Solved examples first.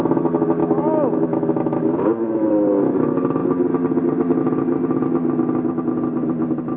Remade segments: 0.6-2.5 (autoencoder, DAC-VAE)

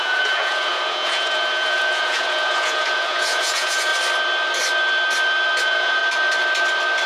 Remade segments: 0.0-3.9 (vocoder, Vocos); 5.6-6.0

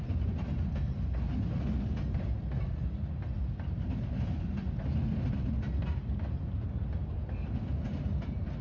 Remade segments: none

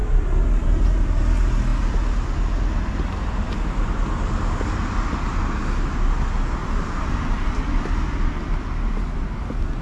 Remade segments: 0.0-1.2 (vocoder, BigVGAN v2); 6.6-7.6

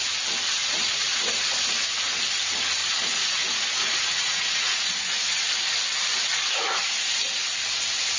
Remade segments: 0.6-1.6 (vocoder, Vocos); 2.8-5.6